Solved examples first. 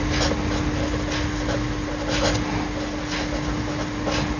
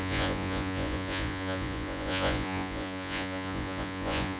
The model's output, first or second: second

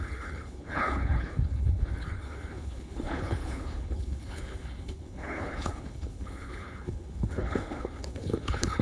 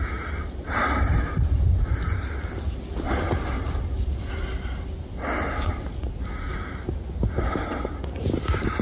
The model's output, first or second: first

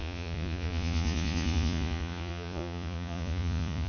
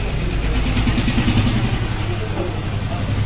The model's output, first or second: first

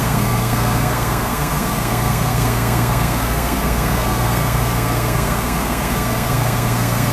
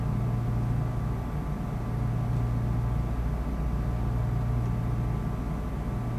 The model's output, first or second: first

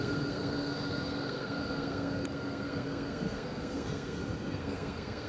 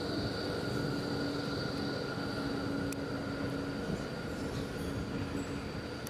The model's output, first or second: first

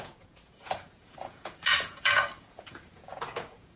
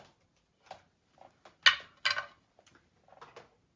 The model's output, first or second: first